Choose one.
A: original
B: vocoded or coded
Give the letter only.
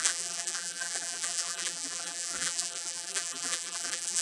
B